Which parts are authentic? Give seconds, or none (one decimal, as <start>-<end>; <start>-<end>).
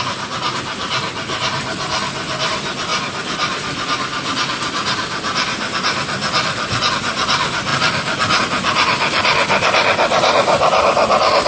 0.0-11.5